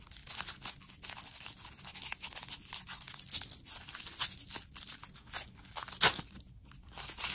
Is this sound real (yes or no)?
yes